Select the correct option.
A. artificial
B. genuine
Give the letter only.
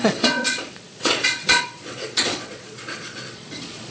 A